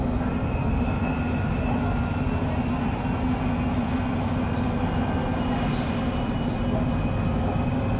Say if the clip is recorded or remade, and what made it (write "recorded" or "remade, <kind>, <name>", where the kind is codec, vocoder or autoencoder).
recorded